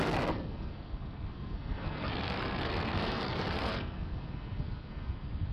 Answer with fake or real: fake